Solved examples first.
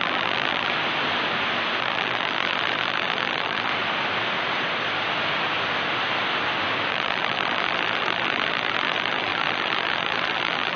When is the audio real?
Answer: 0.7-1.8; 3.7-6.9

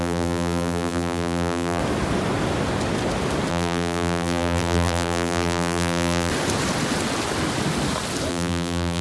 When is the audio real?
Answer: 1.8-3.5; 6.3-8.3

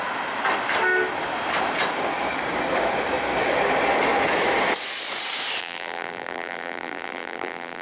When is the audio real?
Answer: 0.0-5.6

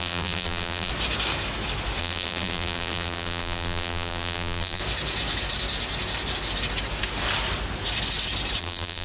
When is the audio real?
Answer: 0.9-2.0; 4.8-8.6